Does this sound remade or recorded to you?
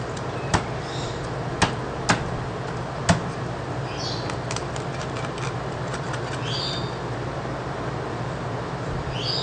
recorded